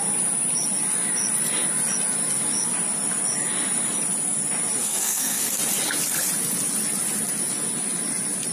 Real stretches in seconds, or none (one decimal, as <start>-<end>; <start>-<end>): 0.0-4.8; 5.5-8.5